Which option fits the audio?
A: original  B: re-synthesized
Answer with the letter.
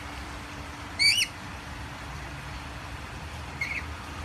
B